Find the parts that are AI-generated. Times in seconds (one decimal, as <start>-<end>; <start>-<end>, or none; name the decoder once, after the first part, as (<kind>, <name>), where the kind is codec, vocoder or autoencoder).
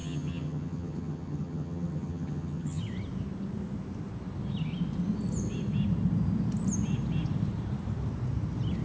0.0-2.8 (vocoder, HiFi-GAN)